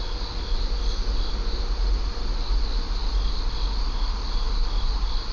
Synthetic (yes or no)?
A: no